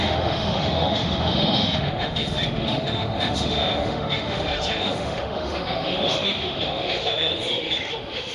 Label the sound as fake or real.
fake